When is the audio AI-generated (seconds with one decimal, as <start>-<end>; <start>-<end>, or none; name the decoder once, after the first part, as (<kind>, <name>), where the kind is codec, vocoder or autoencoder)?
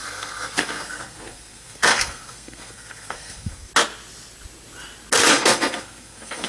0.0-3.7 (codec, SNAC); 5.3-6.5